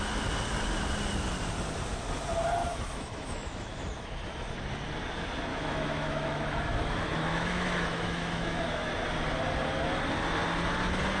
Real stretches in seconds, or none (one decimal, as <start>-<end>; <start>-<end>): 0.0-2.6; 4.5-5.5; 8.9-11.2